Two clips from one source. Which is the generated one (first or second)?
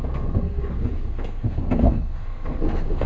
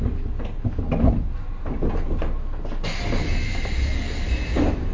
first